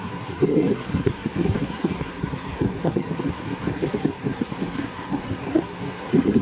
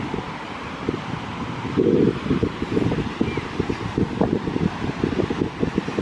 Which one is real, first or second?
second